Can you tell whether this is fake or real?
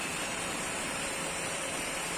fake